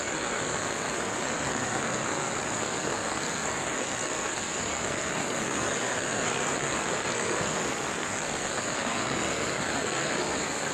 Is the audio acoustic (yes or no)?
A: no